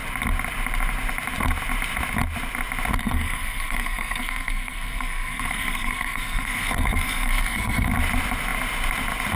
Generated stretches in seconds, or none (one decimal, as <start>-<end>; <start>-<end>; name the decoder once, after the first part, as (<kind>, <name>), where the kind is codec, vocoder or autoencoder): 3.0-7.9 (codec, SNAC)